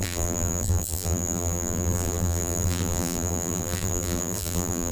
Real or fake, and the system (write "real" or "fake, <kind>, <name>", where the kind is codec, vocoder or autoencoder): fake, vocoder, BigVGAN v2